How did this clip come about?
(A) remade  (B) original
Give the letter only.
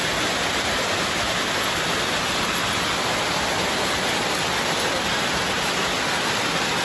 B